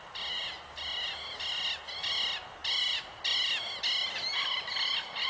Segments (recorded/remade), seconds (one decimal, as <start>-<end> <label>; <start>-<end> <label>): 0.0-5.3 recorded